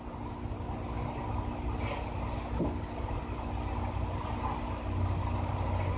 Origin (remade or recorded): recorded